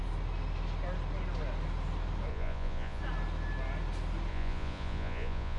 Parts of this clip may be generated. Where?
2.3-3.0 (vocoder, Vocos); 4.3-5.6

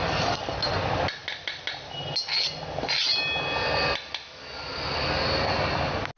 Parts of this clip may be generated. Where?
none

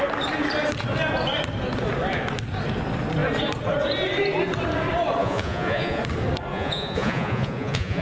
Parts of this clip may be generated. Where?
5.2-6.0 (vocoder, Vocos); 6.5-8.0

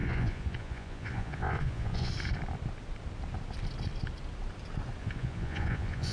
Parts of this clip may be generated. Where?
0.0-2.1 (vocoder, Vocos); 5.0-6.1